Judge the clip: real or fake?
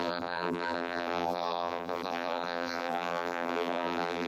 fake